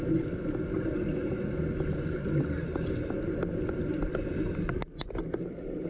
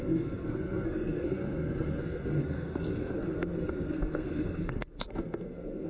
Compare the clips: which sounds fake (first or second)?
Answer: second